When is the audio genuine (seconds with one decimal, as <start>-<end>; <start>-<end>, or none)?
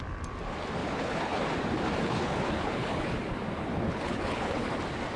0.0-0.8; 1.4-2.0; 3.1-3.6; 4.8-5.2